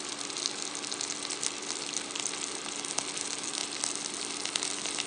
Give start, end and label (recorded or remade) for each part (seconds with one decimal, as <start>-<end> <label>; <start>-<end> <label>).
0.0-5.1 recorded